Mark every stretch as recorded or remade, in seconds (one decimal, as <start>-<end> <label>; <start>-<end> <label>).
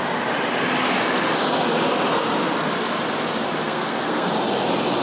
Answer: 0.0-3.6 recorded; 3.6-4.3 remade; 4.3-5.0 recorded